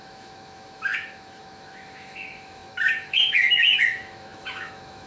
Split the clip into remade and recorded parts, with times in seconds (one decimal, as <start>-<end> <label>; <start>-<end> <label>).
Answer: 0.0-5.1 remade